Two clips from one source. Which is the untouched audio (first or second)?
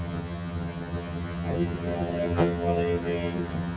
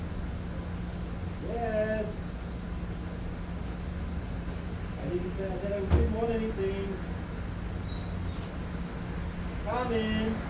second